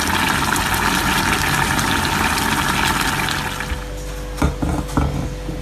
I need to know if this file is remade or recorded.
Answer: recorded